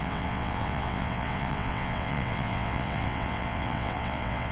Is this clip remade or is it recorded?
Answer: remade